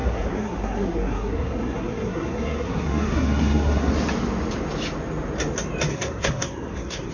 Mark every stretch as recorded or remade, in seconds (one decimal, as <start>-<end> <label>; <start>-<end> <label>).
0.0-3.9 remade; 3.9-5.9 recorded; 5.9-7.1 remade